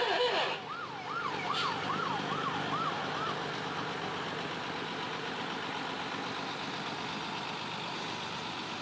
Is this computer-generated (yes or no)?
no